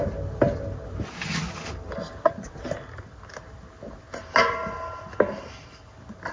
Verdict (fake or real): real